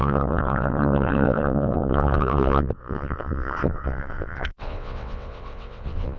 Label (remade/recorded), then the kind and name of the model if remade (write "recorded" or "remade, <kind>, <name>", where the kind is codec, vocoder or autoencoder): remade, vocoder, WaveNeXt